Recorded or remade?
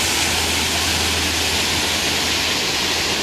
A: recorded